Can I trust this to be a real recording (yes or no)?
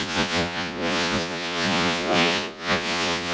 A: no